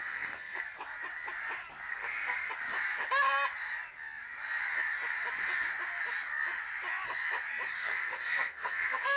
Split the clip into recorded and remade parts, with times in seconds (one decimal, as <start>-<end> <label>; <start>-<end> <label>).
0.0-0.6 remade; 0.6-1.9 recorded; 1.9-2.5 remade; 2.5-7.8 recorded; 7.8-9.2 remade

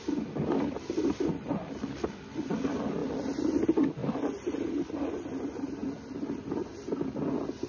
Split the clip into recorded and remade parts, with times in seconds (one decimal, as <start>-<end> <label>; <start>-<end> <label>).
0.0-4.0 recorded; 4.0-4.7 remade; 4.7-5.8 recorded; 5.8-6.5 remade; 6.5-7.7 recorded

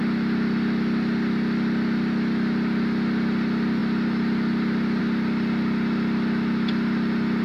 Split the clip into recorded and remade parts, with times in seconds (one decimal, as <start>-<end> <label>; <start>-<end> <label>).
0.0-7.4 recorded

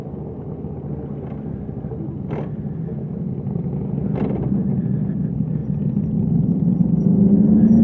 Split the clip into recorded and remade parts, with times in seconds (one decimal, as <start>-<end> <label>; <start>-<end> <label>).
0.0-5.6 recorded; 5.6-6.7 remade; 6.7-7.8 recorded

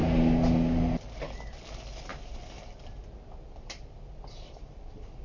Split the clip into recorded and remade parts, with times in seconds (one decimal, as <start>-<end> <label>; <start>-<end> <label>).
0.0-5.2 recorded

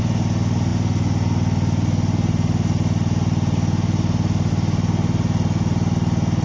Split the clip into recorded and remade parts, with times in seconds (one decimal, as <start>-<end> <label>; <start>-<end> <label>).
0.0-6.4 recorded